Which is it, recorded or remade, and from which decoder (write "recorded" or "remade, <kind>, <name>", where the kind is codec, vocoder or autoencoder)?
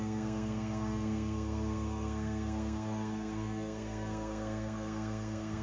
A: remade, codec, SNAC